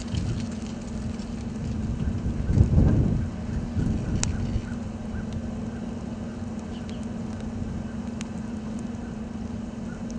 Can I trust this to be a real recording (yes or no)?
yes